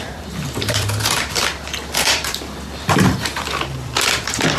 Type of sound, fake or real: fake